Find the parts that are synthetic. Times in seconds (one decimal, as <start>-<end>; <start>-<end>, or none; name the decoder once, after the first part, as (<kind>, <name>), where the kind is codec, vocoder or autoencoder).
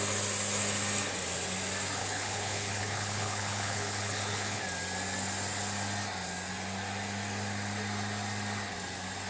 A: 2.0-4.6 (codec, HILCodec)